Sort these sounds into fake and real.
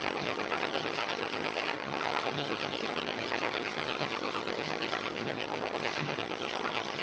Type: fake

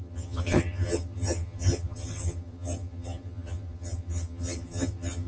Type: fake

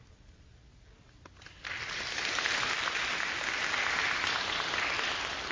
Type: real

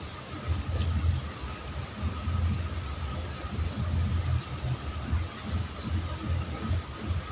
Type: real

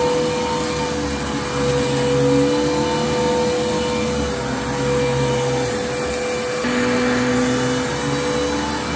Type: real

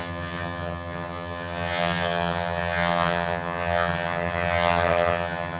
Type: fake